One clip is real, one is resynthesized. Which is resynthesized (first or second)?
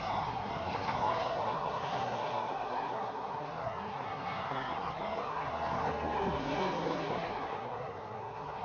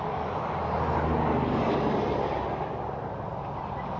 first